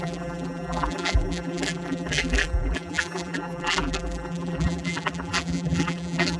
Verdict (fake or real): fake